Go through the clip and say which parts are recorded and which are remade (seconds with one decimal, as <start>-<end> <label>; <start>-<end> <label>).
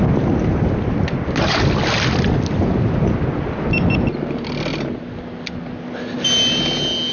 0.0-7.1 recorded